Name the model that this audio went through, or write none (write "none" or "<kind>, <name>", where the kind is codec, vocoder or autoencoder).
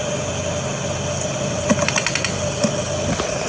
none